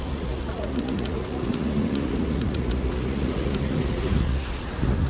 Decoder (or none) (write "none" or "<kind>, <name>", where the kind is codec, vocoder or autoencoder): vocoder, Vocos